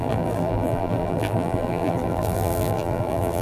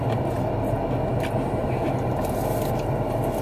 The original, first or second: second